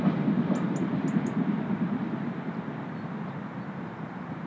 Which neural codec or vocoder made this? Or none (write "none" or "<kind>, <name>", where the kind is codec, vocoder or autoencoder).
none